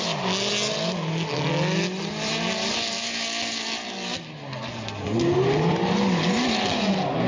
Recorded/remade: recorded